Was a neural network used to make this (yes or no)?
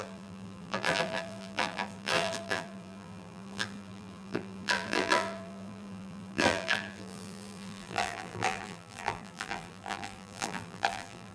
yes